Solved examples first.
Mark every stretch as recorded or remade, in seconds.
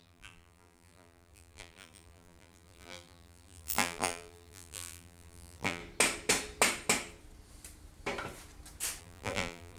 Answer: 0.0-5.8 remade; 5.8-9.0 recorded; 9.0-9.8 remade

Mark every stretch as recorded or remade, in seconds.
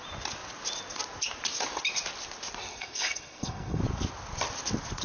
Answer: 0.0-2.7 recorded; 2.7-3.8 remade; 3.8-5.0 recorded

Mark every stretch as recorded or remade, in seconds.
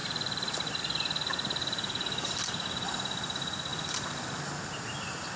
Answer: 0.0-0.8 remade; 0.8-3.7 recorded; 3.7-4.4 remade; 4.4-5.4 recorded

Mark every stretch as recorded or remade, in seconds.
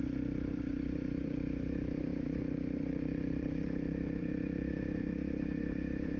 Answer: 0.0-6.2 remade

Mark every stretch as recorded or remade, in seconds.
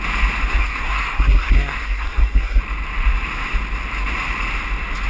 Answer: 0.0-0.6 recorded; 0.6-2.6 remade; 2.6-5.1 recorded